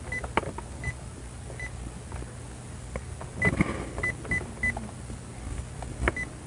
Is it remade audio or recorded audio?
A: recorded